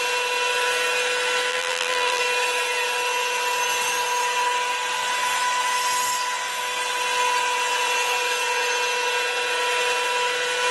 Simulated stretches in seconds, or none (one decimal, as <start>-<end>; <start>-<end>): 1.5-2.2